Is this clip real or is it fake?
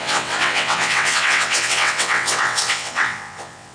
fake